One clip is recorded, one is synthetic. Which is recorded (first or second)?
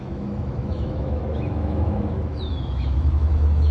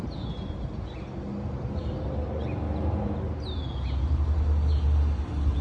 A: second